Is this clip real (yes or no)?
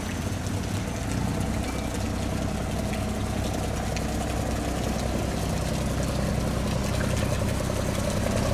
yes